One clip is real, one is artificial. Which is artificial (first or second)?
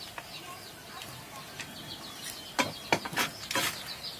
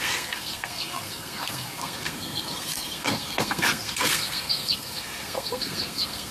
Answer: second